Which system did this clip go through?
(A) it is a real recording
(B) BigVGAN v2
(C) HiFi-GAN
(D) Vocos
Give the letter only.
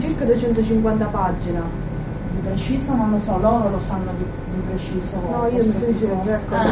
A